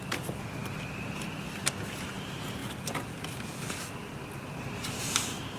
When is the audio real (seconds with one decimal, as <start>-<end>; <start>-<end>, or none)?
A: 0.0-4.0; 4.7-5.6